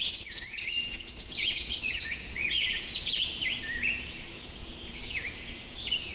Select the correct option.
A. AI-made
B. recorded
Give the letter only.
A